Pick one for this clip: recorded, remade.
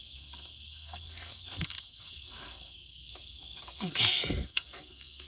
remade